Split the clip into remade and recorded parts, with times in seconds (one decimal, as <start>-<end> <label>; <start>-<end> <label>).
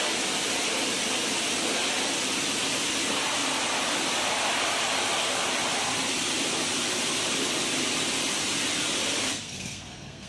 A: 0.0-9.3 recorded; 9.3-10.3 remade